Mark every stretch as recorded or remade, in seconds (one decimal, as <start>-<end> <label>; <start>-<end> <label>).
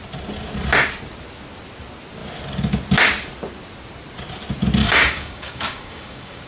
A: 0.0-4.8 recorded; 4.8-6.5 remade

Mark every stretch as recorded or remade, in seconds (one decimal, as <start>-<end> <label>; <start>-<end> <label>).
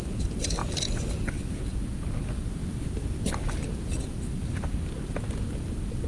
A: 0.0-2.6 recorded; 2.6-3.7 remade; 3.7-6.1 recorded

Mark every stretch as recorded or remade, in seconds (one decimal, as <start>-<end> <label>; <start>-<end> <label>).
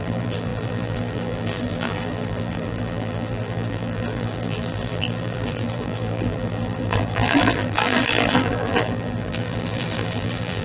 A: 0.0-10.6 remade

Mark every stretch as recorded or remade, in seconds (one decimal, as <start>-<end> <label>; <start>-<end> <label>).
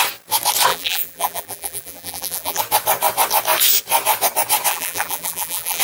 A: 0.0-0.7 recorded; 0.7-2.6 remade; 2.6-4.7 recorded; 4.7-5.8 remade